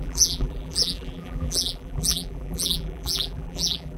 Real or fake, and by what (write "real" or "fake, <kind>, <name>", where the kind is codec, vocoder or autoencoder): fake, vocoder, BigVGAN v2